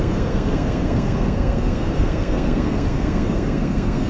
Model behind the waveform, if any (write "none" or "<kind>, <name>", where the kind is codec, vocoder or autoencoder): codec, SNAC